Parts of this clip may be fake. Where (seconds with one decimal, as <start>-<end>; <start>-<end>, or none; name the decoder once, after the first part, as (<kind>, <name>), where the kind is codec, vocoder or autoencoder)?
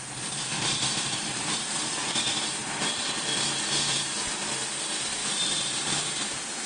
0.7-1.7 (vocoder, BigVGAN v2); 2.6-3.4; 5.2-6.7